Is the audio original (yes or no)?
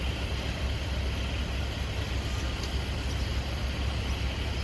yes